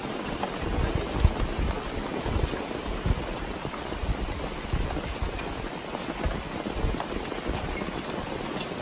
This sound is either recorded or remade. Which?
recorded